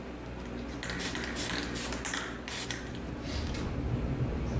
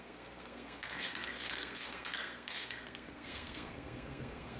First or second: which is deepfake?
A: second